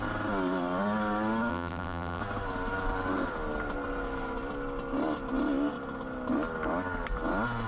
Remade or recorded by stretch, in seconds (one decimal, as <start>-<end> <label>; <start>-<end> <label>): 0.0-1.5 recorded; 1.5-2.2 remade; 2.2-7.7 recorded